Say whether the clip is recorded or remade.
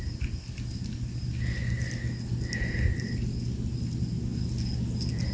recorded